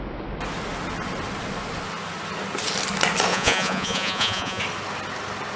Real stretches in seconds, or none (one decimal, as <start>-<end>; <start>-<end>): 0.0-3.3; 4.6-5.6